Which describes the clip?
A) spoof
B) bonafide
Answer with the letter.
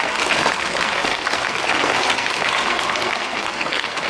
A